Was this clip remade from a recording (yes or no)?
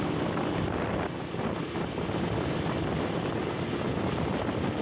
no